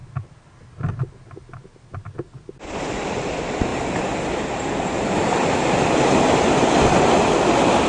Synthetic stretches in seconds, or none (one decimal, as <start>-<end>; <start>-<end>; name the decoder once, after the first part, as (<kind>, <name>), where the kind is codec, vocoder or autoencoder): 3.7-5.6 (vocoder, BigVGAN v2)